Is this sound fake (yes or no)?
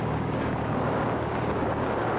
yes